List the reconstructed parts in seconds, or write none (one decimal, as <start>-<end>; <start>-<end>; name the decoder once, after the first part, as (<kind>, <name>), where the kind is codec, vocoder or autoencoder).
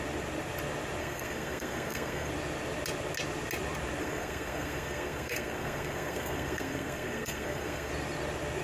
1.0-2.3 (codec, SNAC); 4.0-7.9